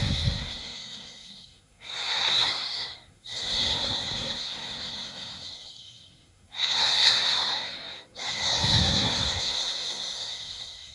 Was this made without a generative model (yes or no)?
no